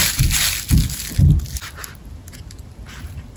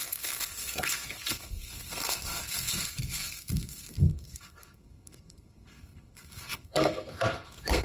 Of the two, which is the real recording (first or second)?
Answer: first